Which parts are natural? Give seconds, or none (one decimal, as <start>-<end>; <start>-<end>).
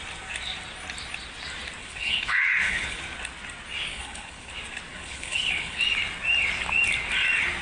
0.0-1.8; 3.0-3.9; 4.5-4.9; 5.8-7.6